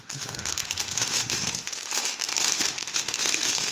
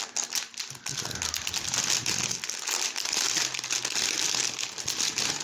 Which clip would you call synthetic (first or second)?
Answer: first